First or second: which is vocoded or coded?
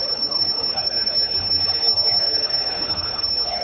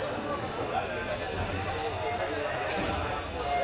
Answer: first